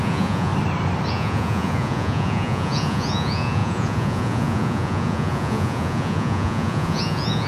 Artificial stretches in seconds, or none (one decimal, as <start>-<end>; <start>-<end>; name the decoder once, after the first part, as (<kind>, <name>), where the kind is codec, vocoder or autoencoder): 0.0-0.5 (vocoder, Vocos); 1.1-7.5

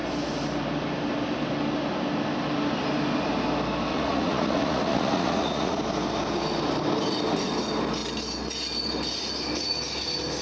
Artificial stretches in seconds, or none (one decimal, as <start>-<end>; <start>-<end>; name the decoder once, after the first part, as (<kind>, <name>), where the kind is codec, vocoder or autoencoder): 3.9-5.8 (vocoder, Vocos)